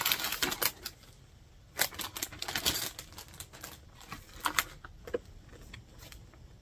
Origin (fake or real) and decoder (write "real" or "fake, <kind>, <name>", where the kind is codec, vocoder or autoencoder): real